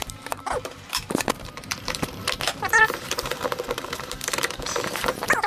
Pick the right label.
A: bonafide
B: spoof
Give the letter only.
B